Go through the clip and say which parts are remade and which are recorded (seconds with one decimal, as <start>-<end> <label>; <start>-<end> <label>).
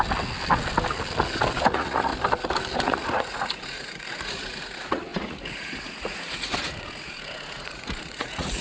0.0-1.6 recorded; 1.6-2.1 remade; 2.1-2.8 recorded; 2.8-8.6 remade